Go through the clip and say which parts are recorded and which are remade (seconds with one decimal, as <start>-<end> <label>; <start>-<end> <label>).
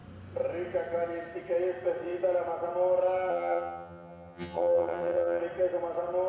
0.0-3.3 recorded; 3.3-5.4 remade; 5.4-6.3 recorded